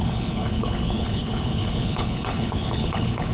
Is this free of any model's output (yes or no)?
no